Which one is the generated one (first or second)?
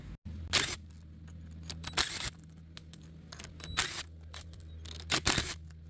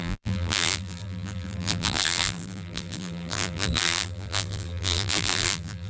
second